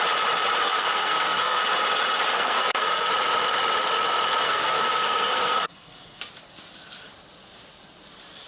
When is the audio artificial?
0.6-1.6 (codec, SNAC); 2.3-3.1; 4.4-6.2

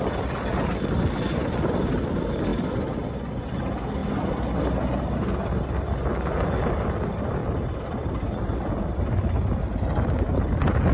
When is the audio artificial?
none

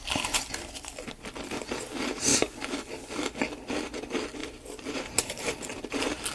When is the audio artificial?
4.4-5.5 (vocoder, BigVGAN v2)

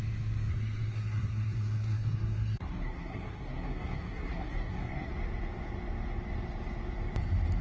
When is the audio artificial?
0.5-5.1 (codec, SNAC)

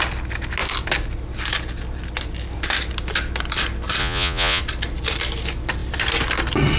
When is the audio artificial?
4.0-4.6 (vocoder, Vocos)

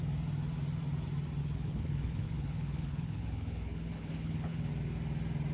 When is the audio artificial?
1.4-4.7 (codec, HILCodec)

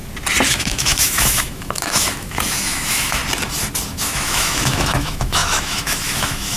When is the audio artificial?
0.5-3.2 (autoencoder, DAC-VAE); 3.9-6.6

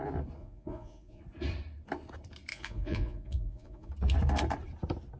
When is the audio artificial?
0.4-1.2 (vocoder, Vocos); 2.5-3.9